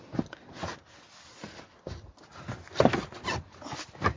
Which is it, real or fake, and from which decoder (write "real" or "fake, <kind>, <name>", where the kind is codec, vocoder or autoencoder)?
real